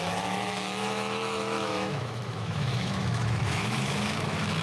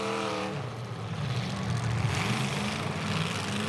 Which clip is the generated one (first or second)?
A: first